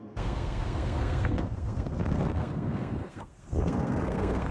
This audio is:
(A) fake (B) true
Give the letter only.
A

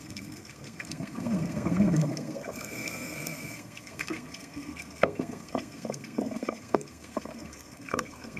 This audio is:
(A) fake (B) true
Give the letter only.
A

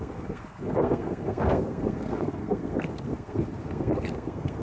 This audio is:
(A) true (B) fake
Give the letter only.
B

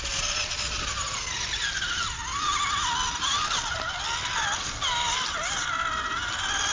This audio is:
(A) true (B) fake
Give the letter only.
A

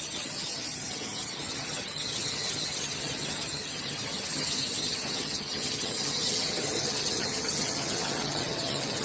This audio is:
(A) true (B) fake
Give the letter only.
B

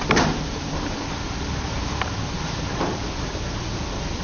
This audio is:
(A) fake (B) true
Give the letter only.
A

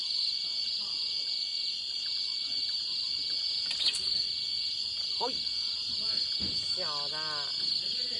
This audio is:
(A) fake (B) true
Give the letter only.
B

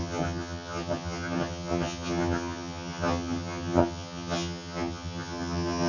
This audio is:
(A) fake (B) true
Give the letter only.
A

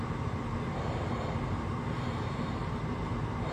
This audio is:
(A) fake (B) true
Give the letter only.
A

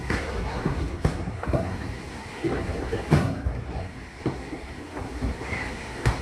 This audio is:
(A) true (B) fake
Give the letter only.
B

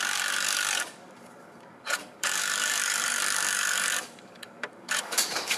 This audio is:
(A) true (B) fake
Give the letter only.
B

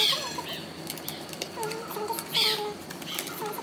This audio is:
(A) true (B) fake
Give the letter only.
A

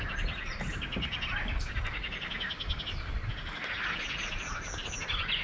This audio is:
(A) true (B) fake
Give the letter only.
A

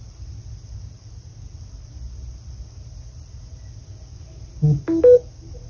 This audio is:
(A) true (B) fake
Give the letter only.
A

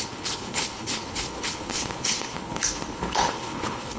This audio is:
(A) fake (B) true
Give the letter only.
A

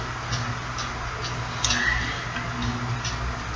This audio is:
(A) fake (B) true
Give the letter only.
B